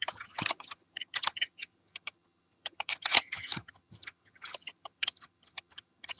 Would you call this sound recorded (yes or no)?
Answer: no